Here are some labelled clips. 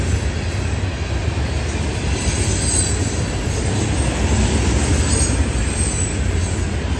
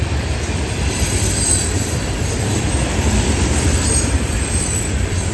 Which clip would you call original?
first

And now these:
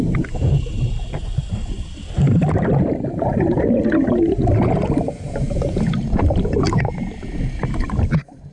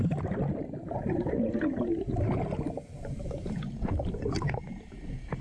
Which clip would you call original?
second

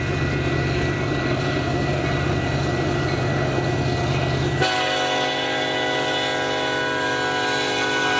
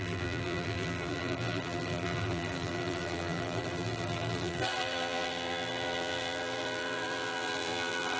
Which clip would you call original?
first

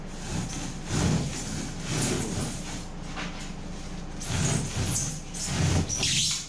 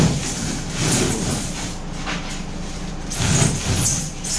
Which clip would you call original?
first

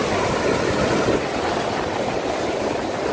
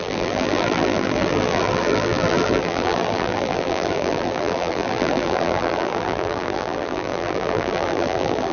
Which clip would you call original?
first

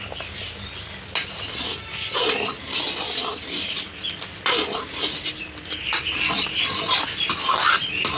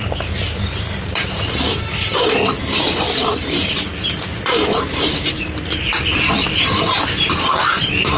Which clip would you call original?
first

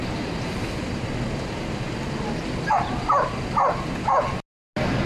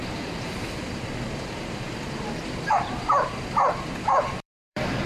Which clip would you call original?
first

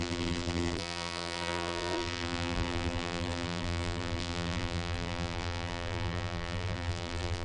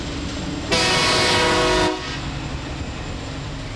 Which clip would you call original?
second